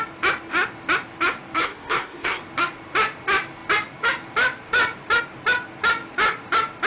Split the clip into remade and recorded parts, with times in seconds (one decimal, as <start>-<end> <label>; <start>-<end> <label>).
0.0-1.6 recorded; 1.6-2.4 remade; 2.4-6.9 recorded